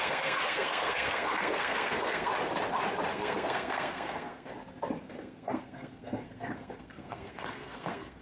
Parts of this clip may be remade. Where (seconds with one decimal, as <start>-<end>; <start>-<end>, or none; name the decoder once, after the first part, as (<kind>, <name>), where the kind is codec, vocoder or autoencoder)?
0.0-2.3 (codec, SNAC); 3.1-4.5; 5.0-8.2